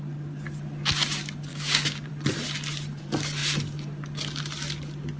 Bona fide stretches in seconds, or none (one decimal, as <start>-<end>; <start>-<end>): 0.0-1.5; 2.1-5.2